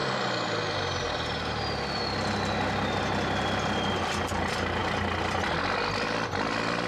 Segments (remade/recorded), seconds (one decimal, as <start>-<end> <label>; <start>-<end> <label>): 0.0-6.9 recorded